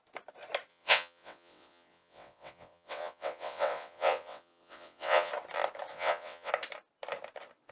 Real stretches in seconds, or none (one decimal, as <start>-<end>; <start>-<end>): 0.0-0.7; 5.3-5.9; 6.5-7.7

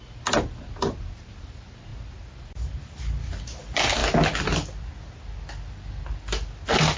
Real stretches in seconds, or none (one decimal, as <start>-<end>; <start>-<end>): 0.0-7.0

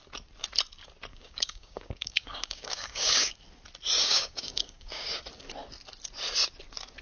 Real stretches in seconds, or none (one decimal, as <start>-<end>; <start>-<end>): 0.0-1.1; 3.3-4.0; 5.2-7.0

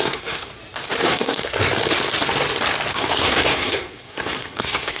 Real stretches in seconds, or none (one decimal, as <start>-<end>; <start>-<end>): 0.5-1.0; 1.6-2.9